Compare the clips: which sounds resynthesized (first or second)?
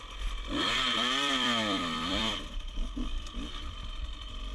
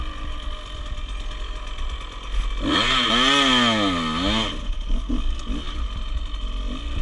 first